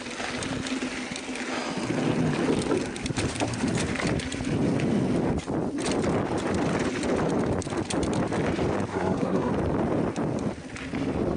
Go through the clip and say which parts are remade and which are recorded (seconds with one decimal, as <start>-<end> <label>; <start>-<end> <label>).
0.0-8.9 recorded; 8.9-9.5 remade; 9.5-11.4 recorded